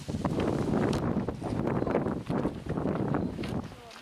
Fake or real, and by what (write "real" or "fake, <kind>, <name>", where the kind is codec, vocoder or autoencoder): real